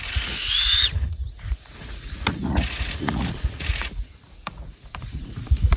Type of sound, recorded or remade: remade